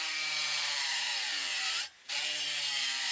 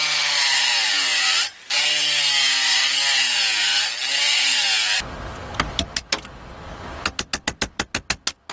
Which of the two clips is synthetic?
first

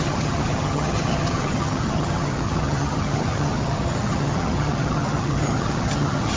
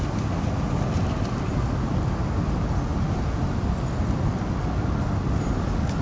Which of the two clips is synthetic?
first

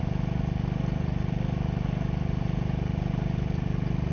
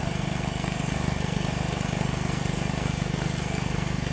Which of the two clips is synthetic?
second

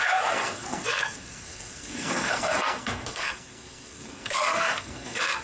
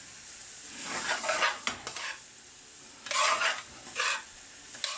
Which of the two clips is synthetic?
first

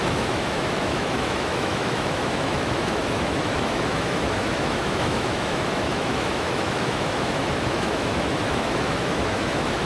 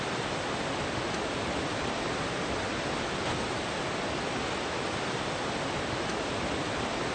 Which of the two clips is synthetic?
first